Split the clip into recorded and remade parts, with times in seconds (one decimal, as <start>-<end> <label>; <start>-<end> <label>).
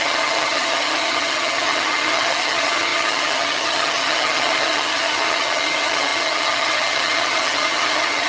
0.0-8.3 remade